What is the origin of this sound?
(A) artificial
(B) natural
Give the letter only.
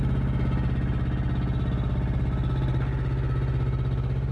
B